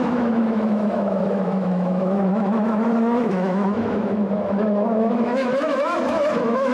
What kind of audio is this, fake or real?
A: fake